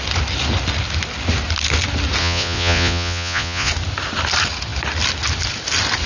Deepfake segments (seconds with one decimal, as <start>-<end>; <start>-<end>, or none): 2.2-3.7